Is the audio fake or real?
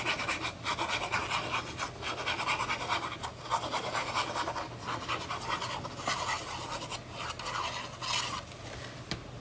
real